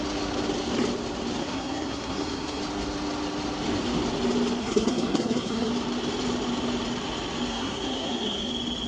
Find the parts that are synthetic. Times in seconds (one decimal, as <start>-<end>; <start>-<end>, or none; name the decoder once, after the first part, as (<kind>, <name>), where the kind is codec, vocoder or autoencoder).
1.4-2.6 (codec, SNAC); 4.6-5.7; 7.5-8.5

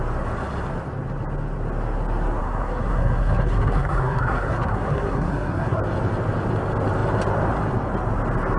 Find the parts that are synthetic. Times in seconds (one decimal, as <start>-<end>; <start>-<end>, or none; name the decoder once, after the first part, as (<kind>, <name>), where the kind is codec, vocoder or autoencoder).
2.4-5.8 (codec, SNAC)